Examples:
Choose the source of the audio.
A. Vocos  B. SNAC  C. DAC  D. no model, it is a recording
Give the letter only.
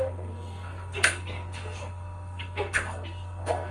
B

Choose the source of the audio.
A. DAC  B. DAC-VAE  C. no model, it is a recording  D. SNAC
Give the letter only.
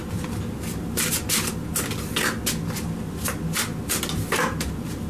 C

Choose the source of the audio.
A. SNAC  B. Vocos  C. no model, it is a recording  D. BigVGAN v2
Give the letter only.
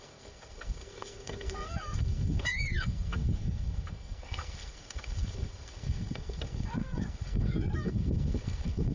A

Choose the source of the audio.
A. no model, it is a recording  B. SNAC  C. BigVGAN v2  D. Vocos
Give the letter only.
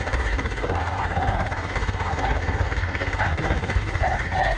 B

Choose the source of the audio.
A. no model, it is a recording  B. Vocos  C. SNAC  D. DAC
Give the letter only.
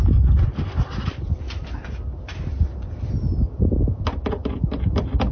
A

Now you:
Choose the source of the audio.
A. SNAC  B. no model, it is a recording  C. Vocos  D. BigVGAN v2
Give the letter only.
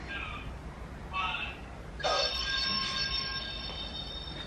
B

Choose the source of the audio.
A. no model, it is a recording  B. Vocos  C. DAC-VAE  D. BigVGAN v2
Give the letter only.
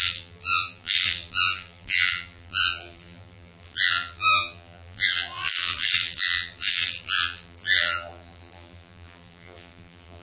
D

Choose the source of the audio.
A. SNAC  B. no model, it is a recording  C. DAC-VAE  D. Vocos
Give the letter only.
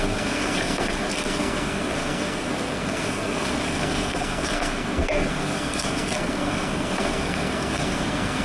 A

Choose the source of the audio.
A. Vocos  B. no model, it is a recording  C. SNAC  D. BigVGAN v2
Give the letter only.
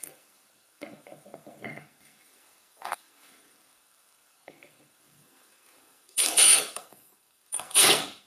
C